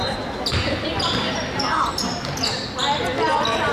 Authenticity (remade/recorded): recorded